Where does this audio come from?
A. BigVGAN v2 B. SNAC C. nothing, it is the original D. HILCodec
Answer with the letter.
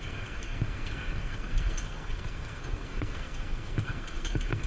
B